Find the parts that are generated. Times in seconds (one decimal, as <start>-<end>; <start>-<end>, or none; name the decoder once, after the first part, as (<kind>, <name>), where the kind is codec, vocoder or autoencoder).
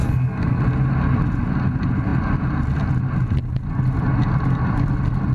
0.0-0.6 (codec, SNAC)